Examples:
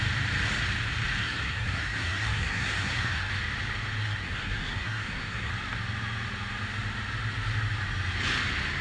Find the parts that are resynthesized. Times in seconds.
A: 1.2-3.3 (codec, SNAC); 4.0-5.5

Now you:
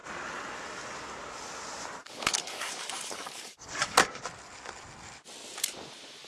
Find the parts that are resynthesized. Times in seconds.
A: 2.0-4.2 (codec, DAC)

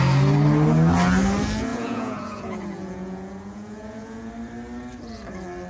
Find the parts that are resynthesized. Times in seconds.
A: 1.7-4.3 (vocoder, Vocos)

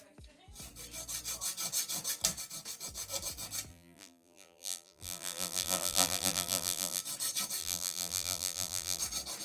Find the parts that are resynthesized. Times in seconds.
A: 3.7-7.0 (vocoder, BigVGAN v2); 7.6-9.0